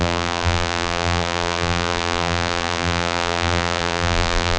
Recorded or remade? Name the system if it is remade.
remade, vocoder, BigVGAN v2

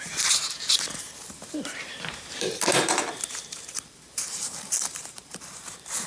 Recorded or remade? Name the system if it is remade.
remade, vocoder, BigVGAN v2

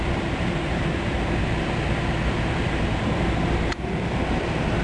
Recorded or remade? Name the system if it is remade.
remade, vocoder, BigVGAN v2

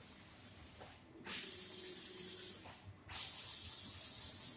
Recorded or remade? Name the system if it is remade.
recorded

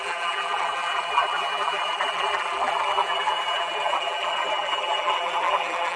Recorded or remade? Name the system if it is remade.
remade, vocoder, BigVGAN v2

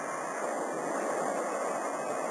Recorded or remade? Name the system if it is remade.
recorded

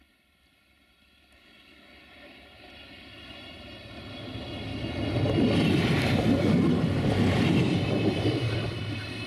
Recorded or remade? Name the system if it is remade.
recorded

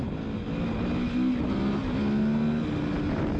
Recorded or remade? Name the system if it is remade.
recorded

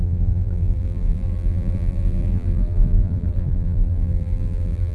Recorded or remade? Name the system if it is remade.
remade, vocoder, BigVGAN v2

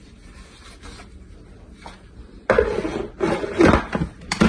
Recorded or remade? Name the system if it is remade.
recorded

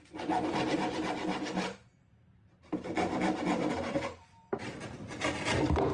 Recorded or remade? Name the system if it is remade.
remade, vocoder, BigVGAN v2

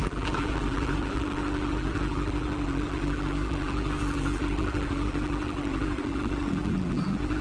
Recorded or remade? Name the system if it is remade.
remade, vocoder, BigVGAN v2